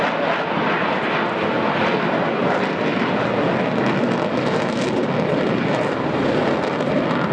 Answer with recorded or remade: recorded